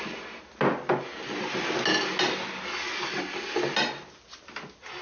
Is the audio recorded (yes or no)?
yes